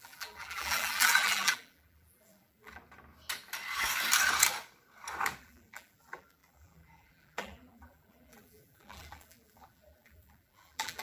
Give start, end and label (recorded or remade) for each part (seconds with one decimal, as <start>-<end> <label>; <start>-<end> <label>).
0.0-2.8 remade; 2.8-5.4 recorded; 5.4-11.0 remade